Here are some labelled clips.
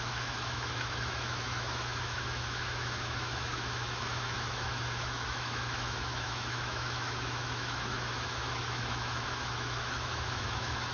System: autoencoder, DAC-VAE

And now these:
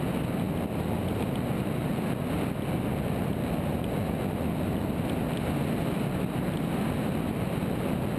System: none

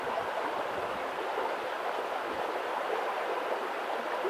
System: none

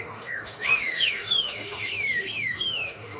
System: autoencoder, DAC-VAE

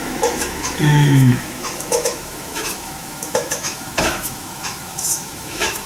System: autoencoder, DAC-VAE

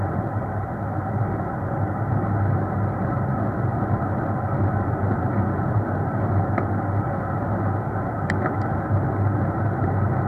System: none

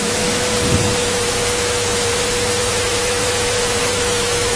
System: autoencoder, DAC-VAE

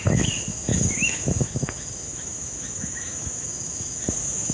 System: autoencoder, DAC-VAE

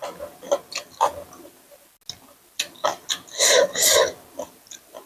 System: none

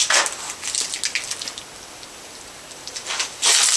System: none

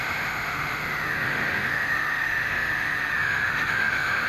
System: autoencoder, DAC-VAE